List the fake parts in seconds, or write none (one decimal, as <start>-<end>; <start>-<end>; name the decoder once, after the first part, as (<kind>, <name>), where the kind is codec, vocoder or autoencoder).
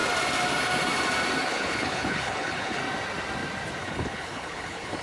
1.4-2.8 (codec, HILCodec); 3.8-5.0